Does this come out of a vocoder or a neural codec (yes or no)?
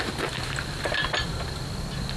no